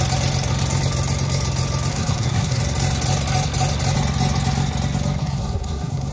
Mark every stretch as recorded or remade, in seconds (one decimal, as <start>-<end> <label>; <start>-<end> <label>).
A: 0.0-1.9 recorded; 1.9-2.6 remade; 2.6-5.2 recorded; 5.2-6.1 remade